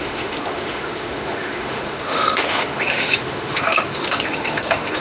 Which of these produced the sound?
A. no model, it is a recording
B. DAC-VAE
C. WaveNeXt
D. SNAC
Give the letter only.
B